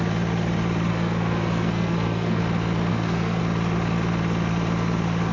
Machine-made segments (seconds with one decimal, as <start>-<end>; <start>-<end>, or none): 0.9-2.4; 2.9-3.4